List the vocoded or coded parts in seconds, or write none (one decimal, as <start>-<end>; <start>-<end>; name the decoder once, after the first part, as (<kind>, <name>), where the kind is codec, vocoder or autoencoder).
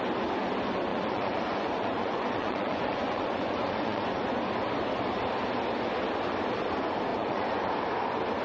0.9-4.4 (vocoder, Vocos); 7.1-7.7